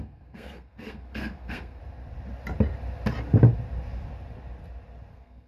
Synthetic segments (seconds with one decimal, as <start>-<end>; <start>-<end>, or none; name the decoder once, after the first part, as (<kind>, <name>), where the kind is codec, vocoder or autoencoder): 0.0-1.8 (codec, SNAC); 5.1-5.5